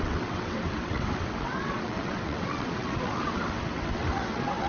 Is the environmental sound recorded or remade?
remade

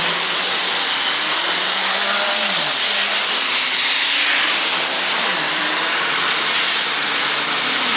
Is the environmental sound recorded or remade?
recorded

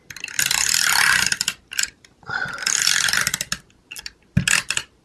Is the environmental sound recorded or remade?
recorded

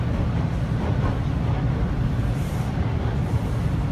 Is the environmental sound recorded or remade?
recorded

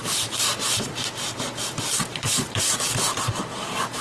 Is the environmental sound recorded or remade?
remade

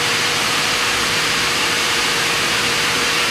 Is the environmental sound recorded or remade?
remade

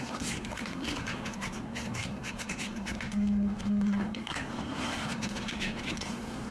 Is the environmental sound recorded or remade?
remade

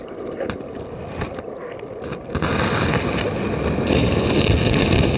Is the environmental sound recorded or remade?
recorded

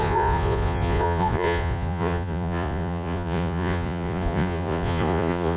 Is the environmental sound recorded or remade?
remade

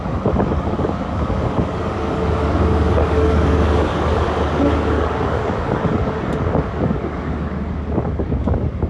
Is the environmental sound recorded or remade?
remade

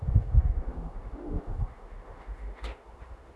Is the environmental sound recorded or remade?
remade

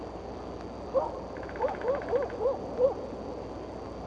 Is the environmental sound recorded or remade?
recorded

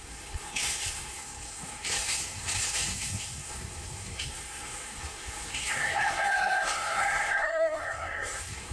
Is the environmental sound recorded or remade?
remade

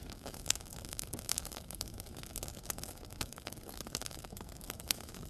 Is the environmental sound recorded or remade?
remade